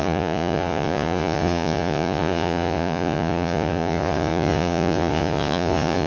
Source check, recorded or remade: remade